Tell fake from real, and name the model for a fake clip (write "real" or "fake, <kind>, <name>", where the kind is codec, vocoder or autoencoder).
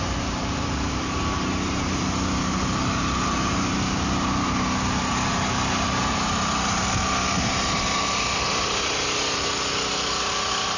real